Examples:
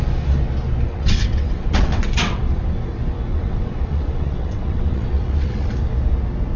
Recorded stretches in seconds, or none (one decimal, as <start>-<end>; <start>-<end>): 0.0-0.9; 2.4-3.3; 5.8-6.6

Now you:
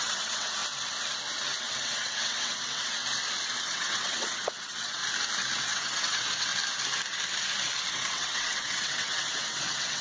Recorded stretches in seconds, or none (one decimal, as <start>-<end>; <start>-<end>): 0.6-1.6; 3.0-3.6; 5.0-5.6; 6.5-7.9

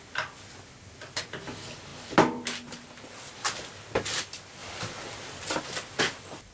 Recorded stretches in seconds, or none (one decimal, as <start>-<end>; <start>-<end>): 0.0-6.5

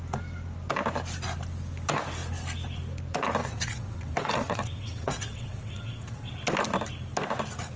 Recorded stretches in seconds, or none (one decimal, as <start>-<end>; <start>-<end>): 0.0-3.4; 6.3-7.8

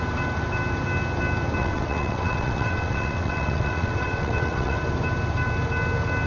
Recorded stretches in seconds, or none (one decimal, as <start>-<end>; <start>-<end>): 0.0-1.6; 4.8-6.3

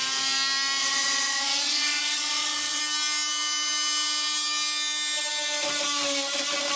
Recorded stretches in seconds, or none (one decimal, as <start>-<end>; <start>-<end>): 0.0-0.8; 2.8-6.8